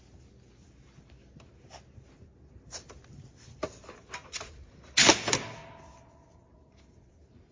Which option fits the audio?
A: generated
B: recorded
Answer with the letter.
B